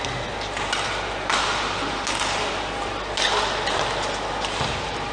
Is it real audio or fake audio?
real